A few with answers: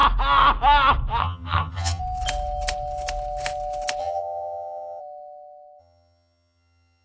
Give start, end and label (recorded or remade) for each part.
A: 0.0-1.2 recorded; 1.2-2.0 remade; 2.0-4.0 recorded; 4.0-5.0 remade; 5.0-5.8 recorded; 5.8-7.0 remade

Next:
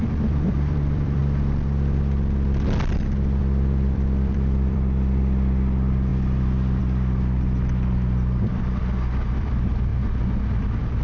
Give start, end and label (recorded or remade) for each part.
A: 0.0-1.2 remade; 1.2-3.4 recorded; 3.4-6.1 remade; 6.1-6.8 recorded; 6.8-9.9 remade; 9.9-10.6 recorded; 10.6-11.0 remade

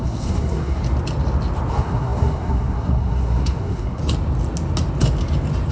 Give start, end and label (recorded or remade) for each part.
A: 0.0-0.8 remade; 0.8-1.7 recorded; 1.7-4.0 remade; 4.0-5.7 recorded

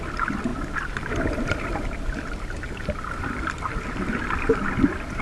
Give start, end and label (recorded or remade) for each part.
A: 0.0-5.2 recorded